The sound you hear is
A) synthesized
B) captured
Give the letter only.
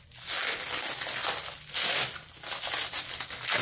B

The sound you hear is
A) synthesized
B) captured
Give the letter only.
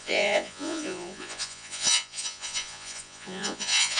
A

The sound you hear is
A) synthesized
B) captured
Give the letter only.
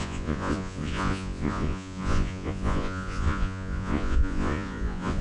A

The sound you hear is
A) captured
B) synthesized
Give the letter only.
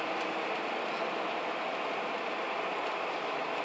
A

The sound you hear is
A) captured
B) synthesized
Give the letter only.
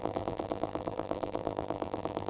B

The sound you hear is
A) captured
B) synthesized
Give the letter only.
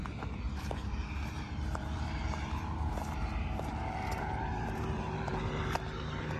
B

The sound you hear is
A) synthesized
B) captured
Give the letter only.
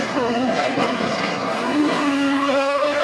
A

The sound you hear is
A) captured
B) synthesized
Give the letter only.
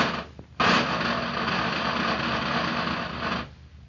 A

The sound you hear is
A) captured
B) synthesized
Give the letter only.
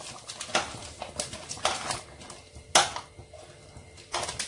A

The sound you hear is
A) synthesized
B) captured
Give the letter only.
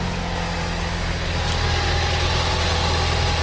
B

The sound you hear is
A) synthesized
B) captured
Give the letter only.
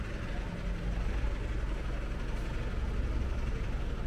B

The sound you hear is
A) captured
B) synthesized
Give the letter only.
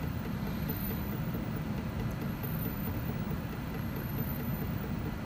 B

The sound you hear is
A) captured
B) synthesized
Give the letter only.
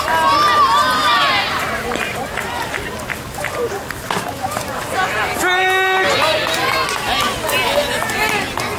A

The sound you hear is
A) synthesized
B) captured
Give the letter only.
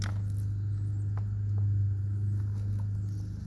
B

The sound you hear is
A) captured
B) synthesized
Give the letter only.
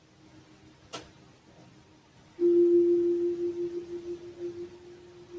A